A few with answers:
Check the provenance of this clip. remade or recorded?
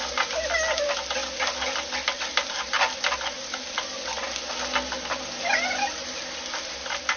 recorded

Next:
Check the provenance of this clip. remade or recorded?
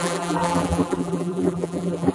remade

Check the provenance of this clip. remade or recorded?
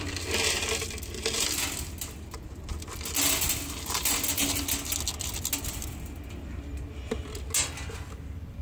recorded